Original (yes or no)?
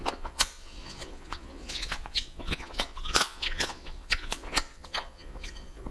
no